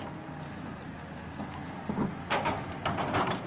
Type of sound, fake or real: real